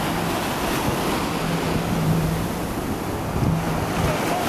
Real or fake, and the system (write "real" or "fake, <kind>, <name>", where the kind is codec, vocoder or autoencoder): real